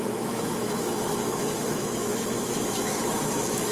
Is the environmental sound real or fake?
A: fake